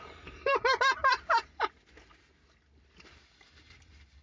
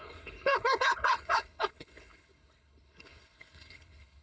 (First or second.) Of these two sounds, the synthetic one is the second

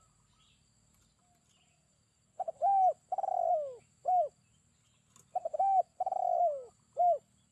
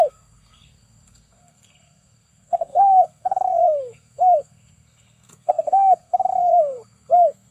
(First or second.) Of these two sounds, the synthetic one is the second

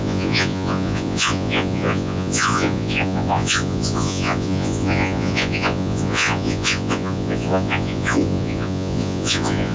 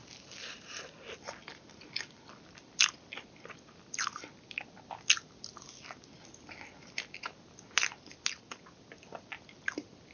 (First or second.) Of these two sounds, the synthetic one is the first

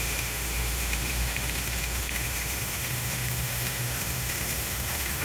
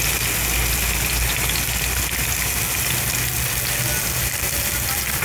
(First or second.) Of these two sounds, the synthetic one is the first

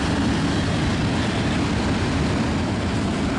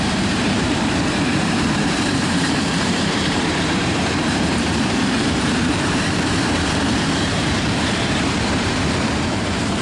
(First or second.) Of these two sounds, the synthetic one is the second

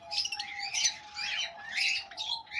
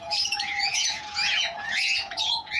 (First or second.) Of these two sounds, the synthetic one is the second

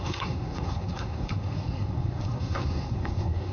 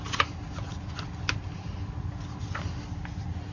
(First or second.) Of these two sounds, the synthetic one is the first